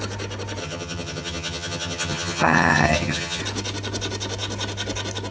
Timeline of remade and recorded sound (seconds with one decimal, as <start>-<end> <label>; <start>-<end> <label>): 0.0-0.6 recorded; 0.6-3.4 remade; 3.4-5.3 recorded